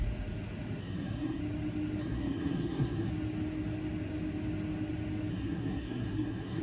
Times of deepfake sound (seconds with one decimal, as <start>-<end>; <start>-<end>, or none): 0.8-1.4; 2.0-3.1; 5.3-6.6